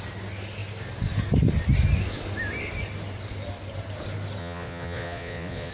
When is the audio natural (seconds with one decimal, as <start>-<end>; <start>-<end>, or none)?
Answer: 0.0-4.4